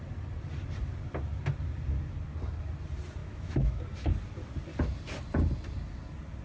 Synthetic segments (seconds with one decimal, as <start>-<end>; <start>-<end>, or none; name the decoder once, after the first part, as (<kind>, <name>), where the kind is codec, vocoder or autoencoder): 3.2-3.8 (autoencoder, DAC-VAE)